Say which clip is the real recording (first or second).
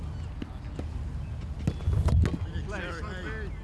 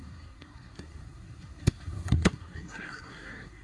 first